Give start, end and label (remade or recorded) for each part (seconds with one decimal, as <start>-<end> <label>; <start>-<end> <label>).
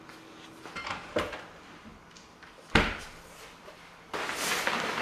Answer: 0.0-5.0 recorded